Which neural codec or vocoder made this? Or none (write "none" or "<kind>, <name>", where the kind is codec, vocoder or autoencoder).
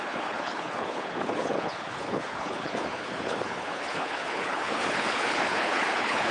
codec, HILCodec